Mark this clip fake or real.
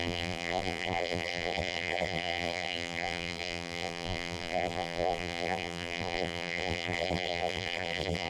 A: fake